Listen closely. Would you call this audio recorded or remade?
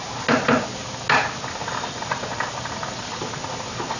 recorded